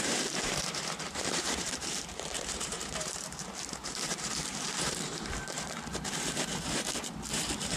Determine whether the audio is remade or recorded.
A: remade